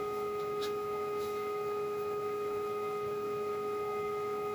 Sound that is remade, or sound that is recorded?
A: remade